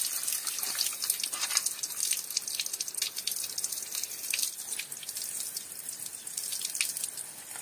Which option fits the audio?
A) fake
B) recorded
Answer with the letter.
B